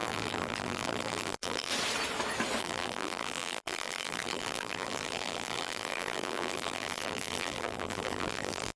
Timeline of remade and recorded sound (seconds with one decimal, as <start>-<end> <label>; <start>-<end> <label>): 0.0-1.7 remade; 1.7-2.6 recorded; 2.6-8.8 remade